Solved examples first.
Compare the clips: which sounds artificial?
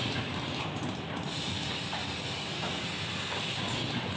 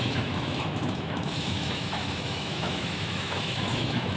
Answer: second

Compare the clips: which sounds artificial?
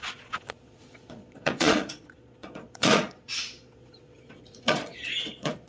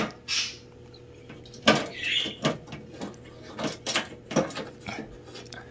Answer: first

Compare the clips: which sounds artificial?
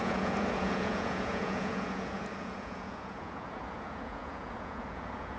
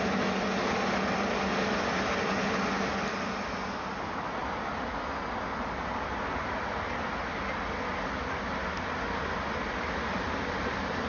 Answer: first